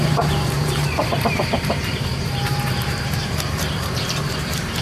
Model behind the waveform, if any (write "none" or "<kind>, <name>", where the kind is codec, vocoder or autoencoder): vocoder, BigVGAN v2